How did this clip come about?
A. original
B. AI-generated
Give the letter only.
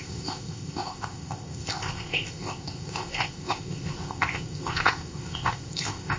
B